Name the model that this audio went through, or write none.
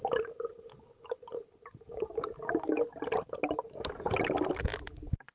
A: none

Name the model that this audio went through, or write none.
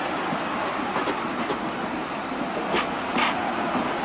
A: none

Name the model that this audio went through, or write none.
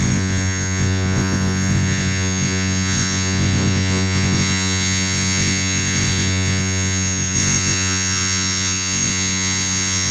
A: vocoder, Vocos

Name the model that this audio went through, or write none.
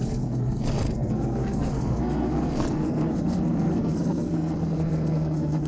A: codec, SNAC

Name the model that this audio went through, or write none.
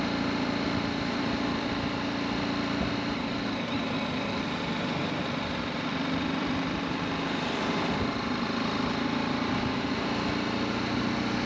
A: vocoder, BigVGAN v2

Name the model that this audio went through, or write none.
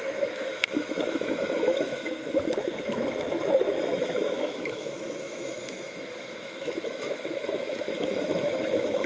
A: autoencoder, DAC-VAE